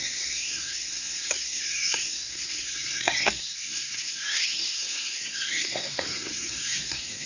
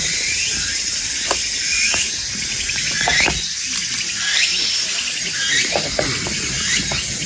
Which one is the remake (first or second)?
first